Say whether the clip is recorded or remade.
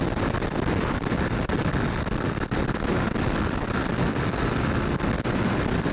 recorded